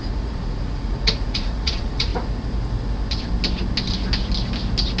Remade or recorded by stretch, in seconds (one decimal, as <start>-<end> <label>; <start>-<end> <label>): 0.0-2.1 remade; 2.1-5.0 recorded